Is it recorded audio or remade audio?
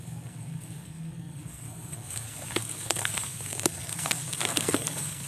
remade